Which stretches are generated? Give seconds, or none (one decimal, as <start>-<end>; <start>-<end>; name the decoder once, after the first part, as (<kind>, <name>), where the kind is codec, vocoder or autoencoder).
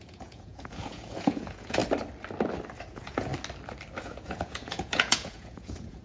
0.0-1.8 (vocoder, Vocos); 2.9-3.3; 4.0-6.0